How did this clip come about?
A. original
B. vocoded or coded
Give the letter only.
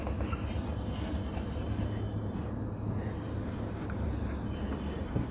A